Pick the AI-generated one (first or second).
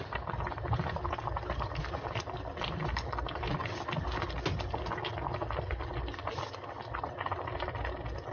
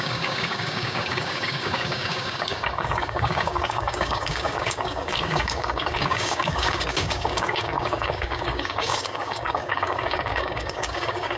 second